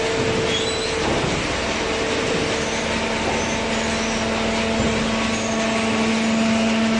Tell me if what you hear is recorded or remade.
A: recorded